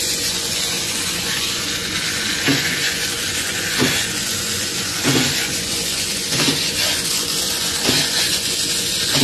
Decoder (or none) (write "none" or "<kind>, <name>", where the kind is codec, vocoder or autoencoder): vocoder, Vocos